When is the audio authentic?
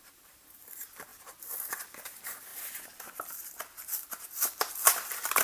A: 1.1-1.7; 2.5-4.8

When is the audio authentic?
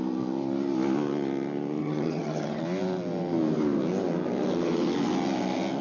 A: 0.0-1.8; 2.6-5.8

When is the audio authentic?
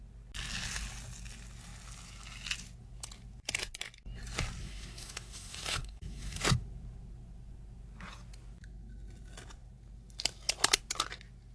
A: 0.0-4.6; 6.4-11.5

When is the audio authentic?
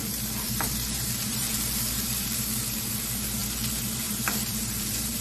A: none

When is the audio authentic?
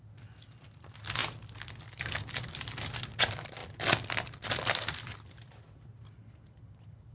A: 0.0-7.1